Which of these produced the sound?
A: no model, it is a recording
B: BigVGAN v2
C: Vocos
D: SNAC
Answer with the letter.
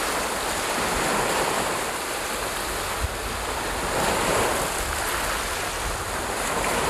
A